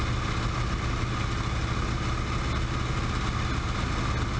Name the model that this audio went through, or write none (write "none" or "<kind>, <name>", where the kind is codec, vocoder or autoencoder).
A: none